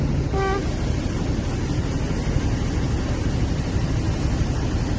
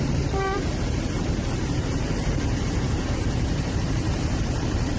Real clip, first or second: first